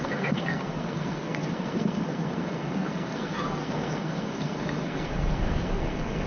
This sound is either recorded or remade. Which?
remade